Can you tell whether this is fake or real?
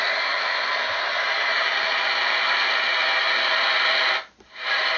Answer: real